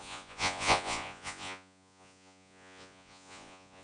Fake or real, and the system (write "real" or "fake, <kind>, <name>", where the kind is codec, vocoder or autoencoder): fake, vocoder, Vocos